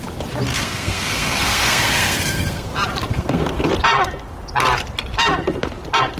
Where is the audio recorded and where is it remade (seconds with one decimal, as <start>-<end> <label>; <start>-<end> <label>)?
0.0-0.5 recorded; 0.5-2.7 remade; 2.7-3.1 recorded; 3.1-3.7 remade; 3.7-6.2 recorded